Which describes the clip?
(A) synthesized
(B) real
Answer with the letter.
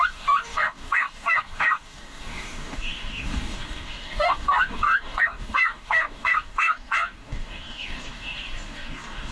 A